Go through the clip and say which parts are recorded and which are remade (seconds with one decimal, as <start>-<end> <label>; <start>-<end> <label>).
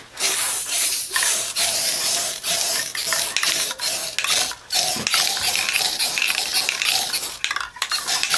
0.0-2.9 remade; 2.9-3.5 recorded; 3.5-4.0 remade; 4.0-5.8 recorded; 5.8-6.5 remade; 6.5-7.7 recorded; 7.7-8.4 remade